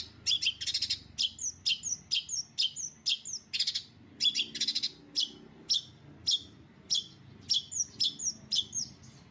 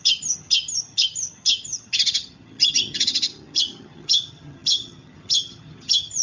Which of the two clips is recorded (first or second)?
first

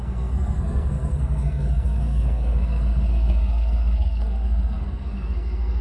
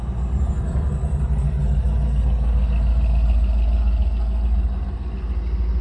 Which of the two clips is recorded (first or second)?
second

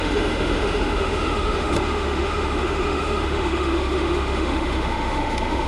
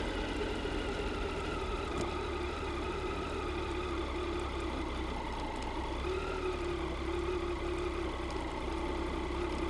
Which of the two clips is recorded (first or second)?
second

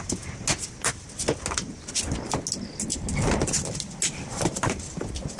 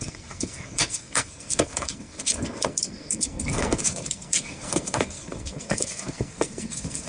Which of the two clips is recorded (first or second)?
first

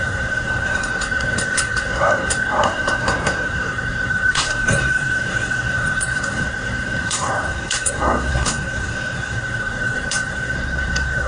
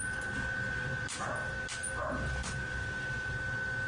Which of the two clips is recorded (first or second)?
second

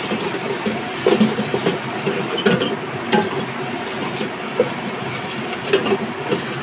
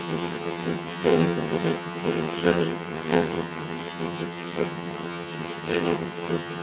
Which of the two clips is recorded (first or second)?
first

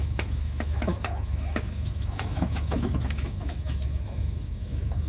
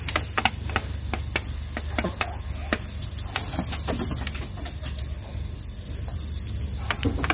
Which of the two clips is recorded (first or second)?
second